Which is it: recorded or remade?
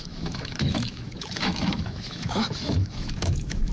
remade